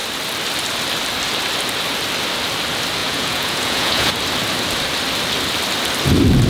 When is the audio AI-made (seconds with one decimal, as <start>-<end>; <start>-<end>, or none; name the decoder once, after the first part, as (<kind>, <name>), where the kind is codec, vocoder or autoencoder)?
3.0-4.1 (vocoder, Vocos)